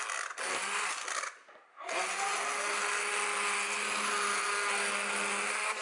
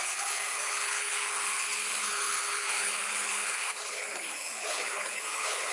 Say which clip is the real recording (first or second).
first